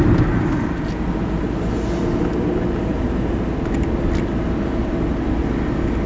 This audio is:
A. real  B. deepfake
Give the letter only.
A